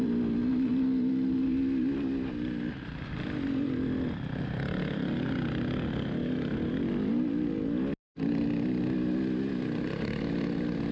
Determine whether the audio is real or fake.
real